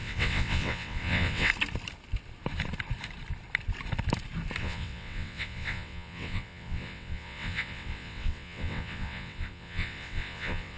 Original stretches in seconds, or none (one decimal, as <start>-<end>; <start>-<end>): 1.5-4.6